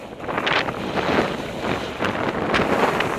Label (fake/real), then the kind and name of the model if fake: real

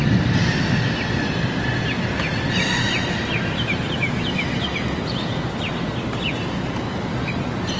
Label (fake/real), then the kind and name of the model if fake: real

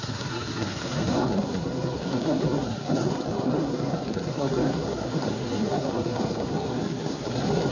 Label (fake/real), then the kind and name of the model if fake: fake, codec, SNAC